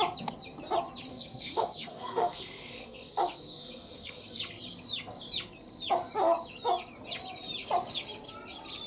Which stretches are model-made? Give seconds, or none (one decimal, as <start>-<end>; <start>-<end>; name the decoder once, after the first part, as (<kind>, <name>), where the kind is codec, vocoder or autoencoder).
1.1-4.4 (codec, SNAC)

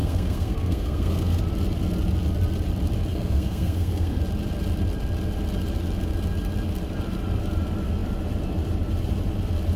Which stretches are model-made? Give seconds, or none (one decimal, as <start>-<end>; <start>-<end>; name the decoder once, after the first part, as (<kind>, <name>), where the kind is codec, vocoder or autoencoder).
0.0-1.4 (codec, SNAC); 3.1-4.2